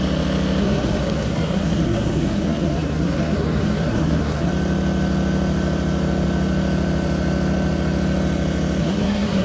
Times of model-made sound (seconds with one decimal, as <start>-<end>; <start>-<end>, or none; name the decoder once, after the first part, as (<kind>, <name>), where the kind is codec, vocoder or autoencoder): 0.6-4.5 (codec, SNAC); 8.8-9.4